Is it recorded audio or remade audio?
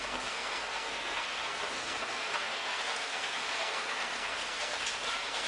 remade